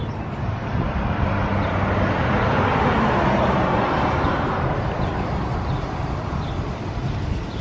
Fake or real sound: real